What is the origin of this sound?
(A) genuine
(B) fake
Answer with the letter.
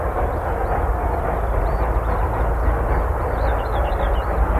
A